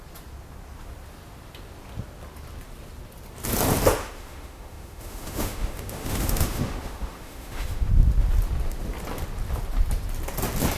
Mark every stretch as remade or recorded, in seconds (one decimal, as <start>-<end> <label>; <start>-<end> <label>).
0.0-4.0 recorded; 4.0-7.9 remade; 7.9-10.8 recorded